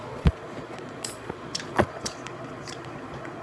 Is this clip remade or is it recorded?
remade